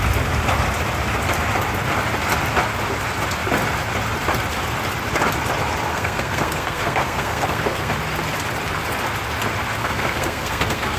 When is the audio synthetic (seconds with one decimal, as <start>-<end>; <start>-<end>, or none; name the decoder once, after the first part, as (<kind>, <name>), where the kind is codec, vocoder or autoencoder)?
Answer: 5.9-7.9 (codec, SNAC); 9.8-11.0